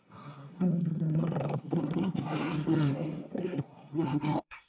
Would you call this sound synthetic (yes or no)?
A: yes